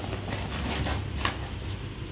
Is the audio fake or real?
real